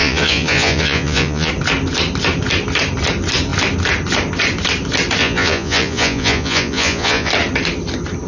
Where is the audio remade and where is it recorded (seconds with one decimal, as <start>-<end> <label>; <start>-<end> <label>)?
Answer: 0.0-1.5 remade; 1.5-5.2 recorded; 5.2-7.3 remade; 7.3-8.3 recorded